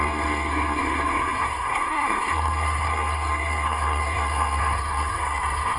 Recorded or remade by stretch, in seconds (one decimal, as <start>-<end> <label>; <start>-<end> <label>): 0.0-5.8 remade